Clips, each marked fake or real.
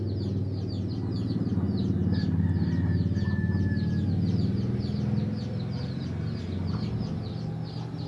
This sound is real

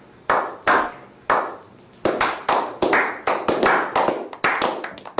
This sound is real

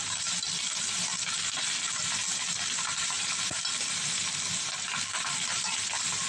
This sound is real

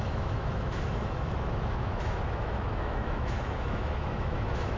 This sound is fake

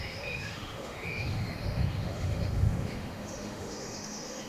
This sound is fake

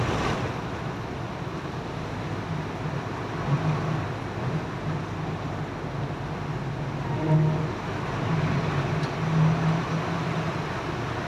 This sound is real